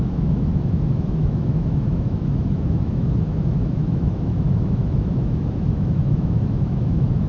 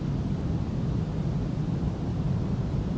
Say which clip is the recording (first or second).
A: second